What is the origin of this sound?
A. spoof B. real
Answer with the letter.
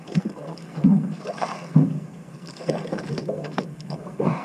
A